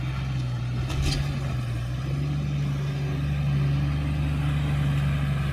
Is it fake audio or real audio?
real